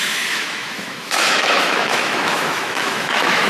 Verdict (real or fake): fake